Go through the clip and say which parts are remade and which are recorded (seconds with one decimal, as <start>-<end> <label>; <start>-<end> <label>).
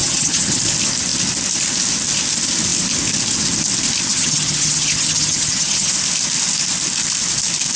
0.0-0.6 remade; 0.6-4.1 recorded; 4.1-5.9 remade; 5.9-7.8 recorded